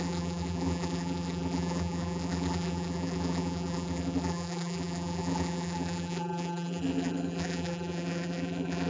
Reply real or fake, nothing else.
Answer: fake